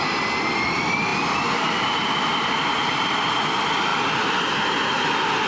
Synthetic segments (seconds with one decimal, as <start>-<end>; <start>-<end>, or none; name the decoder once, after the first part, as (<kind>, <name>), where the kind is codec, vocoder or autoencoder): none